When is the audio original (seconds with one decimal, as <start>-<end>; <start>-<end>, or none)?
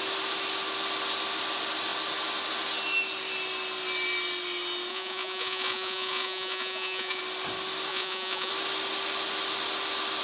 0.0-4.9; 7.2-7.9; 8.5-10.2